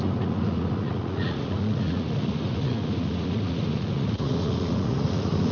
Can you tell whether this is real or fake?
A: fake